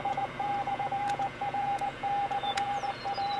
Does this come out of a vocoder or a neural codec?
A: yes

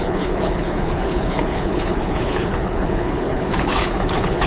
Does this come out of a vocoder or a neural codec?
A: yes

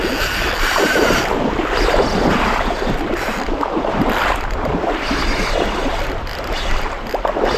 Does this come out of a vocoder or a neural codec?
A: yes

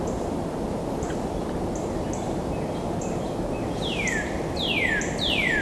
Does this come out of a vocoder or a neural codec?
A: yes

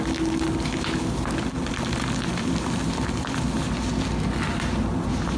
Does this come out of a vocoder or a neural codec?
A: no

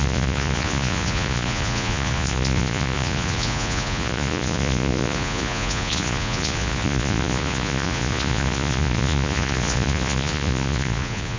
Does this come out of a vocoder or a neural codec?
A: yes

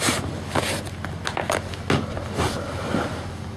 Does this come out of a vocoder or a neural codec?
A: no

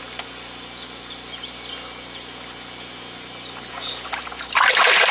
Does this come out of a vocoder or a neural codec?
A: no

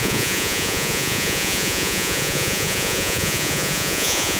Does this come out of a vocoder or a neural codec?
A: yes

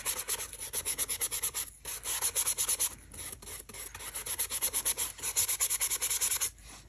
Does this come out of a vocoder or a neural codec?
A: no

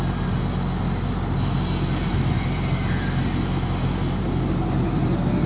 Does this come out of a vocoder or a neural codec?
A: no